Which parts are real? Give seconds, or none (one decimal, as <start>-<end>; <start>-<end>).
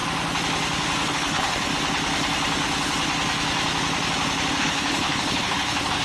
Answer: 0.0-1.1; 1.7-4.6